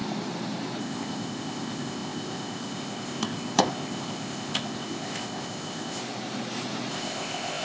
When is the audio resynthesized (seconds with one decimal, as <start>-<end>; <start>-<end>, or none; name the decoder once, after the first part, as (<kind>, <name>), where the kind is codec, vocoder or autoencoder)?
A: 0.8-6.0 (codec, ZipCodec); 6.9-7.6

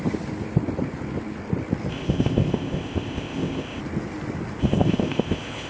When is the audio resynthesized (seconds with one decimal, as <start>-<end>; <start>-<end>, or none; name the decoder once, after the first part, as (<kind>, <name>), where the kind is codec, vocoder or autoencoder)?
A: 1.9-3.8 (codec, ZipCodec); 4.6-5.7

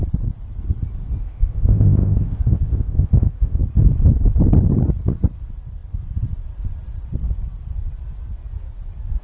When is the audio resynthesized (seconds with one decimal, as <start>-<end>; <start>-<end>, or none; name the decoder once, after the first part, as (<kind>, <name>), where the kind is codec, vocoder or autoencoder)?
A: 1.2-3.6 (codec, ZipCodec)

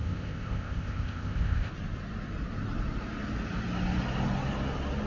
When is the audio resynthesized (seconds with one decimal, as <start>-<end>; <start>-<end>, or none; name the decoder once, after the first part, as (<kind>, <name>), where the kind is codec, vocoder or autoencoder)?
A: 0.0-1.7 (codec, ZipCodec)

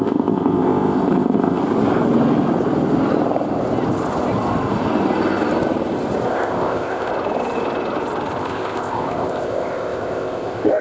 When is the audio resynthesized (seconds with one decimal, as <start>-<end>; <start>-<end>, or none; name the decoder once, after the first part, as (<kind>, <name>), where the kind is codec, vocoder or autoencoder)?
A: 0.0-1.6 (codec, ZipCodec); 6.3-7.1; 8.4-10.8

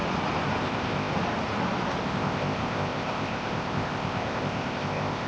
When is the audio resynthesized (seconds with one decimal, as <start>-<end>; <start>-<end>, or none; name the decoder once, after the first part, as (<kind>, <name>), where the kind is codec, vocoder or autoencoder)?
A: 0.6-1.1 (codec, ZipCodec); 2.0-5.3

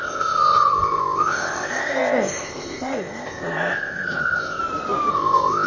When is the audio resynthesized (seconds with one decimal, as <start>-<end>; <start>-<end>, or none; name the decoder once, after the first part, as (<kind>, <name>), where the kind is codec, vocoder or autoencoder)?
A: 0.0-4.6 (codec, ZipCodec); 5.1-5.7